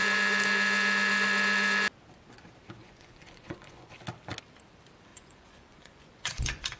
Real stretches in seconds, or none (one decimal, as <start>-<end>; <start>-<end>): 0.0-2.8; 3.9-5.1